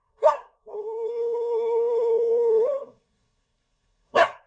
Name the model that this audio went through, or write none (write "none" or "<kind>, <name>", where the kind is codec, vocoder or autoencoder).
codec, SNAC